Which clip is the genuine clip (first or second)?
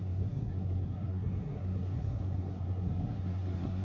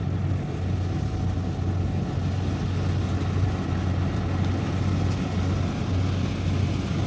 second